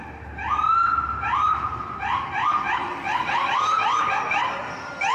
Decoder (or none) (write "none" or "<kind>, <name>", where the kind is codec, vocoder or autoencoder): none